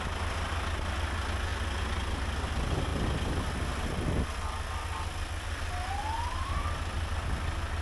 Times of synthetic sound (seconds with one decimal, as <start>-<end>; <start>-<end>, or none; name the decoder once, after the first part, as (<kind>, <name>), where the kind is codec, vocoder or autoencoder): none